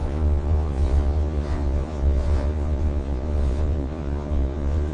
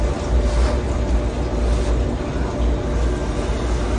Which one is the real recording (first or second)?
second